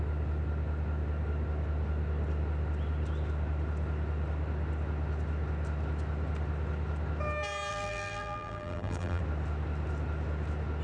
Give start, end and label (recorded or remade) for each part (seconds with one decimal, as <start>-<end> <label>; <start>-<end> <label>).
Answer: 0.0-7.7 recorded; 7.7-9.2 remade; 9.2-10.8 recorded